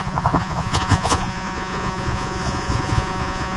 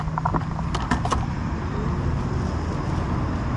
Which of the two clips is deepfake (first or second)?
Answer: first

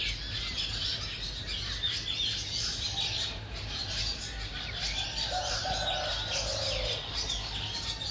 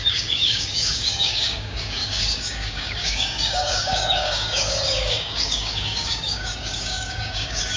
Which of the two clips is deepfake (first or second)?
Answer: second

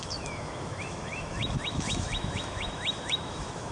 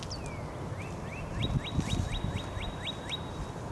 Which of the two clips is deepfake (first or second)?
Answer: first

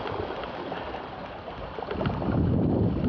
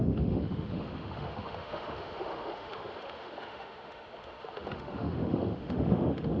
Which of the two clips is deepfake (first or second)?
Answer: second